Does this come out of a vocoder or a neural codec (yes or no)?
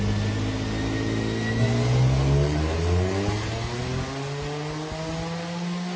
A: no